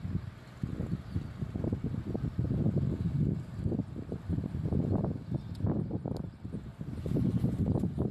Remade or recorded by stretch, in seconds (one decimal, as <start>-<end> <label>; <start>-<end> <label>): 0.0-8.1 recorded